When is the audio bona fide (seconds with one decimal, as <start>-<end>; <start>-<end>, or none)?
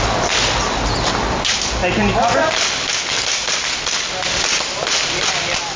0.0-5.8